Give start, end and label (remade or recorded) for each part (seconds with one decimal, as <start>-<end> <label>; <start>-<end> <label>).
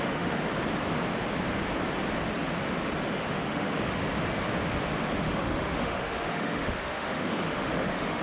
0.0-0.4 remade; 0.4-3.3 recorded; 3.3-4.0 remade; 4.0-5.1 recorded; 5.1-8.2 remade